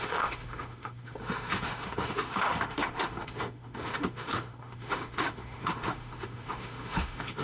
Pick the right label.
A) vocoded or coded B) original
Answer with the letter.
A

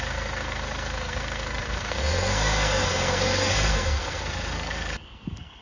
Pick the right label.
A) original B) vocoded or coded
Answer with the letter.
B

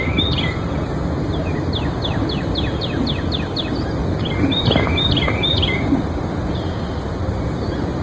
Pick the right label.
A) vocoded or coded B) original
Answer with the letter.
B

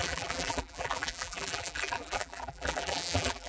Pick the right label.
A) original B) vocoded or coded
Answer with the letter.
B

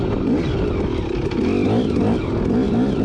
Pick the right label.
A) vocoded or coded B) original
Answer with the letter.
B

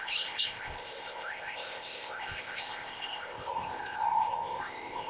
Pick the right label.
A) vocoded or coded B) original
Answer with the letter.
A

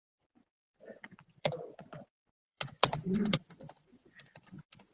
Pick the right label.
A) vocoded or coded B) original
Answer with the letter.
A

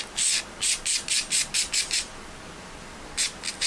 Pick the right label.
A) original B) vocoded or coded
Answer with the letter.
A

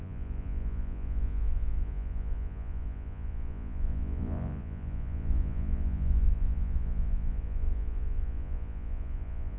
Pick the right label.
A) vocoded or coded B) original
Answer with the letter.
A